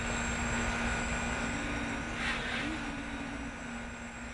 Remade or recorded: recorded